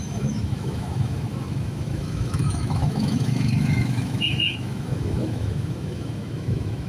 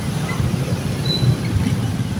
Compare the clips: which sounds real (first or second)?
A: second